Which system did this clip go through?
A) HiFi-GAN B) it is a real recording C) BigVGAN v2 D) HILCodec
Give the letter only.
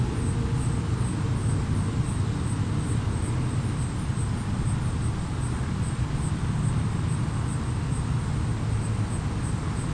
B